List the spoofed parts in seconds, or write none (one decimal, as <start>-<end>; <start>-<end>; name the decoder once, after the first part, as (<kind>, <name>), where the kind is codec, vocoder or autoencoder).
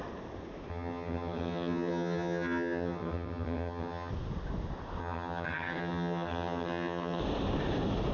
0.7-4.1 (vocoder, HiFi-GAN); 5.0-7.2